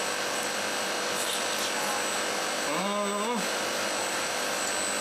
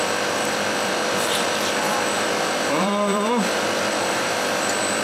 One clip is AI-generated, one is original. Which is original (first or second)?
first